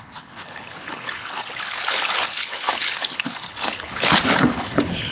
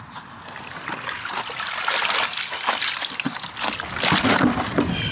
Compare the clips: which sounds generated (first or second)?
first